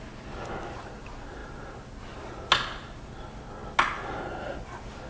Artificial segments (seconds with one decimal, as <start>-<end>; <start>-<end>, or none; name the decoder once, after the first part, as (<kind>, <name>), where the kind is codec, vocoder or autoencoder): none